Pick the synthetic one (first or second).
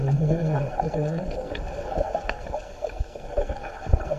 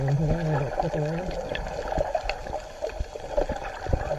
first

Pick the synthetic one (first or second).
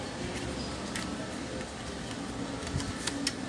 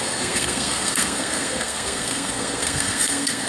second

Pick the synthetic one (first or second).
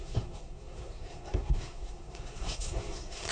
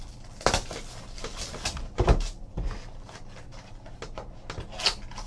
first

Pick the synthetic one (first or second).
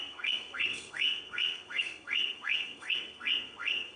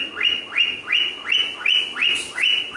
first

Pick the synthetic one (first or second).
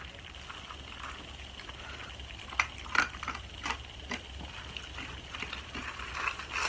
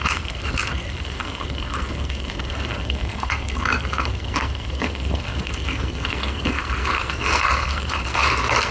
second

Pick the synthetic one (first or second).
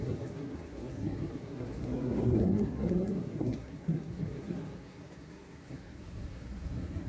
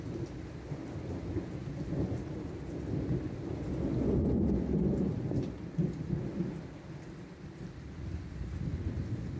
first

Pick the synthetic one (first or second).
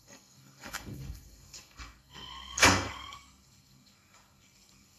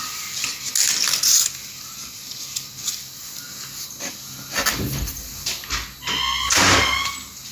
first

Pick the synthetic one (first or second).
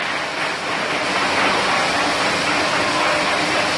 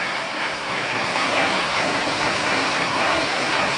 second